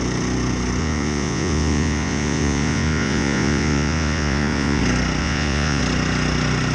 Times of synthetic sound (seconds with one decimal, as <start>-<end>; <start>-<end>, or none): 0.8-4.8; 5.2-5.8